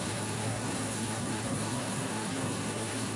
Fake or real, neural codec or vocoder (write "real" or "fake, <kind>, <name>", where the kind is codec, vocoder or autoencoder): fake, codec, SNAC